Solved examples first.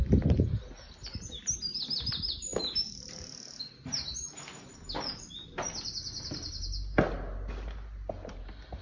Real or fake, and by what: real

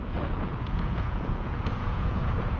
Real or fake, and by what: fake, vocoder, Vocos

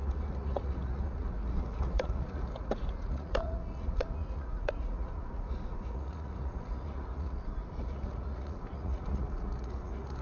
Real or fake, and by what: fake, vocoder, Vocos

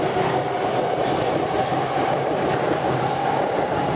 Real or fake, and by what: real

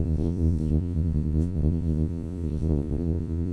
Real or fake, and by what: fake, vocoder, Vocos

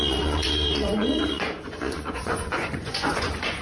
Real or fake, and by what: fake, vocoder, Vocos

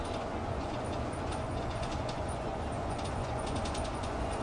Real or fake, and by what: fake, vocoder, Vocos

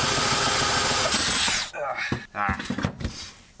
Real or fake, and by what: real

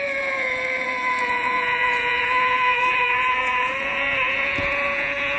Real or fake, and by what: fake, vocoder, Vocos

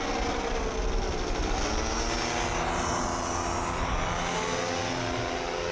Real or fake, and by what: real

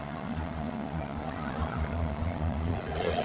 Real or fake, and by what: fake, vocoder, Vocos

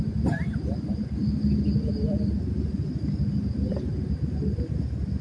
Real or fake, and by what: real